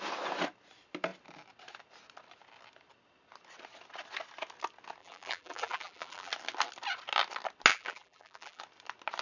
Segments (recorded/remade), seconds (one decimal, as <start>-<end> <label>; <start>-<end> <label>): 0.0-5.0 recorded; 5.0-6.3 remade; 6.3-7.7 recorded; 7.7-8.6 remade; 8.6-9.2 recorded